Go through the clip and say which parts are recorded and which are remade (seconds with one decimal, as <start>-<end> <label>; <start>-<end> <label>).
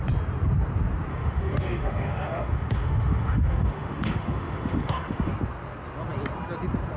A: 0.0-1.1 recorded; 1.1-5.3 remade; 5.3-7.0 recorded